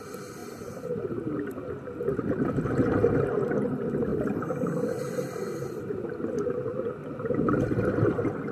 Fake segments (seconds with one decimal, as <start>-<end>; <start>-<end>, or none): 4.1-6.9